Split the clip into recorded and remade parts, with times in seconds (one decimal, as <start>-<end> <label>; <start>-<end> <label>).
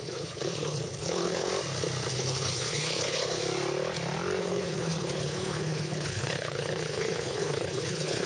0.0-1.5 remade; 1.5-2.1 recorded; 2.1-3.4 remade; 3.4-4.4 recorded; 4.4-8.3 remade